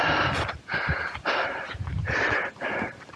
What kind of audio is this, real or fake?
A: real